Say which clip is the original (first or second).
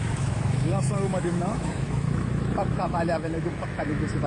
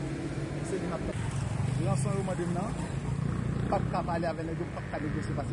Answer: second